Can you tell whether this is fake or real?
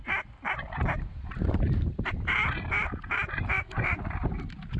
fake